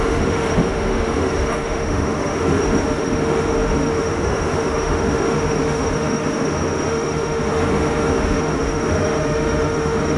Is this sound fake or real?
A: fake